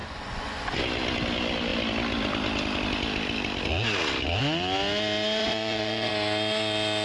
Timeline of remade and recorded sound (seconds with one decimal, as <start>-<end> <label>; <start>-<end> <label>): 0.0-0.8 remade; 0.8-5.4 recorded; 5.4-6.1 remade; 6.1-7.0 recorded